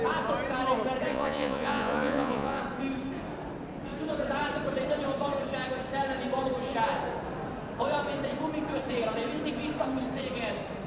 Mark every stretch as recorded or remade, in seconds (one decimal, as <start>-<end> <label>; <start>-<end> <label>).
0.0-1.1 recorded; 1.1-2.6 remade; 2.6-10.9 recorded